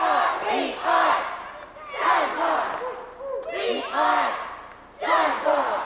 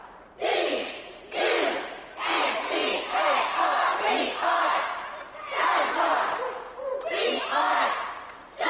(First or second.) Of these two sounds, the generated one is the second